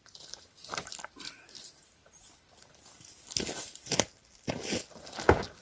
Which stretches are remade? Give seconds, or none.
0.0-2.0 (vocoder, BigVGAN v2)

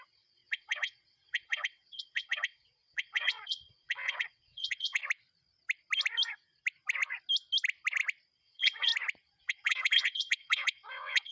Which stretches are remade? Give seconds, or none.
0.0-5.0 (vocoder, WaveNeXt); 8.4-8.9; 9.4-11.3

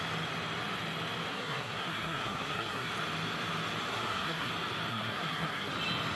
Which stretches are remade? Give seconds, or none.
1.3-2.9 (codec, SNAC); 3.9-4.5; 4.9-5.7